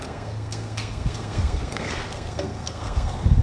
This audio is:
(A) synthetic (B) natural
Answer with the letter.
A